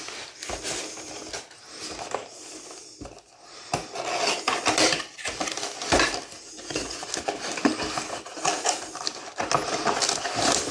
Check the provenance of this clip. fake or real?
real